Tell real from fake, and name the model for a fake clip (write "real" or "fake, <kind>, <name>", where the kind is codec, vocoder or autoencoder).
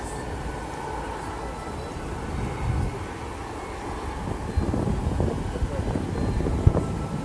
real